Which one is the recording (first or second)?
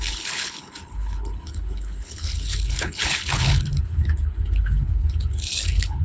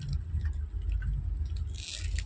second